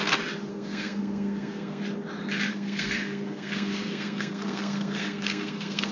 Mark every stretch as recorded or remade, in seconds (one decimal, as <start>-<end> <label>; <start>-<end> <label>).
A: 0.0-0.5 recorded; 0.5-1.8 remade; 1.8-2.5 recorded; 2.5-5.9 remade